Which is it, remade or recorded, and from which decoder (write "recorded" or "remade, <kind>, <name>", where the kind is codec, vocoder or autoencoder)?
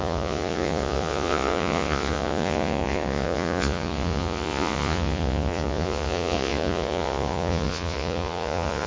remade, vocoder, Vocos